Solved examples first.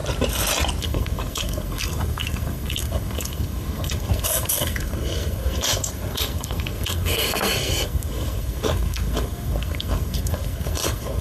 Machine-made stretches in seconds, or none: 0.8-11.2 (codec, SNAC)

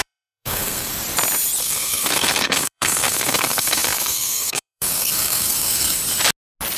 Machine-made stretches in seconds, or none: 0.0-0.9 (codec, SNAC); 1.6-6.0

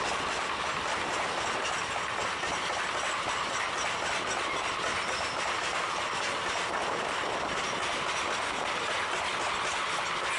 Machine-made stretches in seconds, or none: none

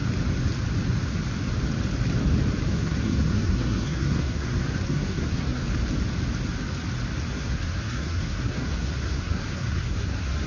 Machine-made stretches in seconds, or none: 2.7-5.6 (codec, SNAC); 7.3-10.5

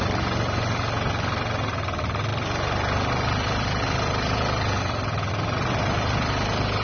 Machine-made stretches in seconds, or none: none